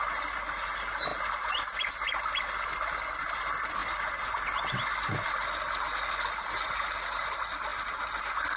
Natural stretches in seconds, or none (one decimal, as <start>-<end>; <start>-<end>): 0.0-8.6